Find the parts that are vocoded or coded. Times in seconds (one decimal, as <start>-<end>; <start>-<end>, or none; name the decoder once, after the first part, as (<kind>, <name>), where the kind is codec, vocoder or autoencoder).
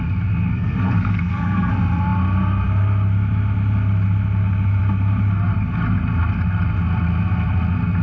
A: 0.5-1.7 (codec, SNAC)